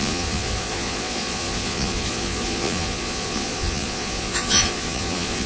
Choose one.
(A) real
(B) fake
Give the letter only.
B